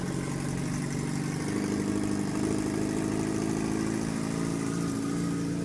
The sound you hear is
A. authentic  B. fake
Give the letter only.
A